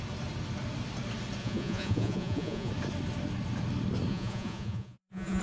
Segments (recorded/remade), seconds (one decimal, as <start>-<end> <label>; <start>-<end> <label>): 0.0-1.4 recorded; 1.4-2.7 remade; 2.7-4.1 recorded; 4.1-5.4 remade